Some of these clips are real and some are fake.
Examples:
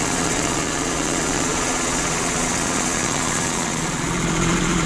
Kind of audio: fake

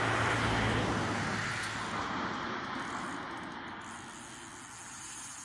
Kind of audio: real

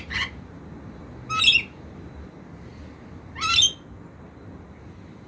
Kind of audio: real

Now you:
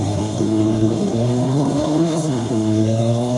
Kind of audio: fake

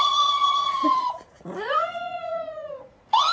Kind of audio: fake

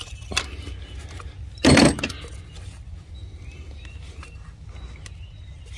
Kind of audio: real